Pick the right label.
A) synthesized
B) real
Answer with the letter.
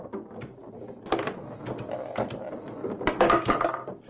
B